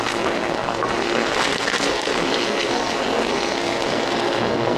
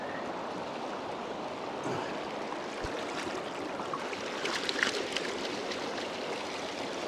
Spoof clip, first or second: first